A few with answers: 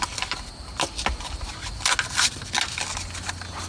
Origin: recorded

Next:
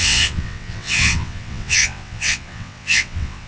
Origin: remade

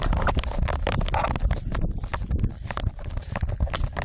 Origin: recorded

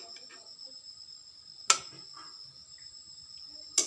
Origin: recorded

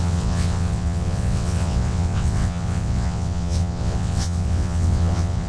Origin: remade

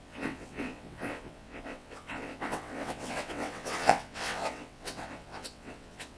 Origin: remade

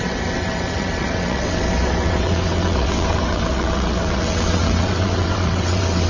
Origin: remade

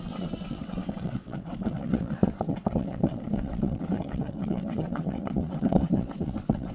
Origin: remade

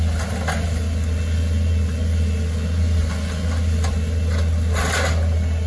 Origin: recorded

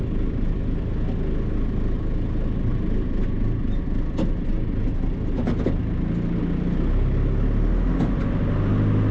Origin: recorded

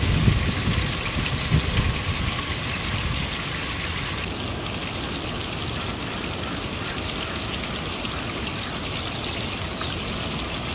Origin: recorded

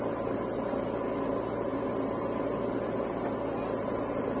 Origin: recorded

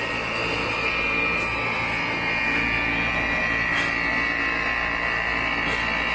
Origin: recorded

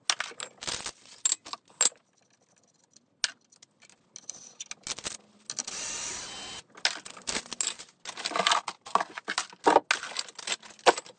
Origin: recorded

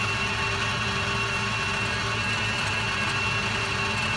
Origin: recorded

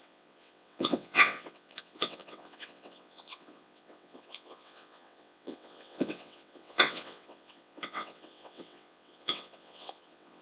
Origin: remade